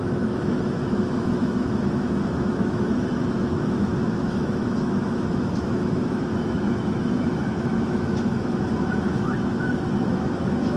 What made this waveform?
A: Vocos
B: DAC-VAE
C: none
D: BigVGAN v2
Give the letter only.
B